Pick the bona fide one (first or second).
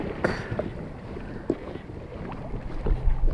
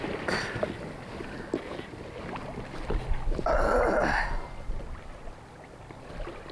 second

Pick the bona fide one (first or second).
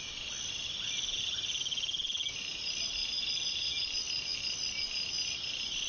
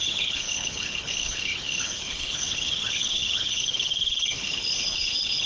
first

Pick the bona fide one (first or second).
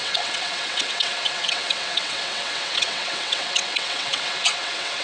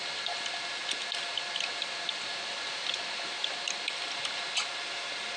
second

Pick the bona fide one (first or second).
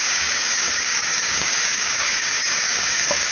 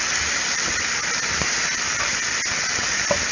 second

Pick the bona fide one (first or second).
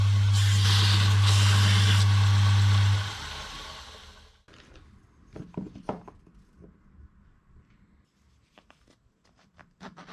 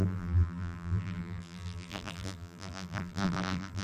first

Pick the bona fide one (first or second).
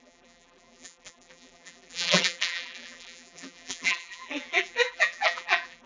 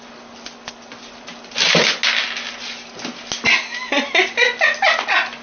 second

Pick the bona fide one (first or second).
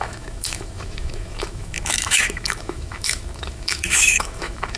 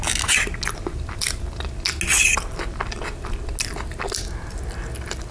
second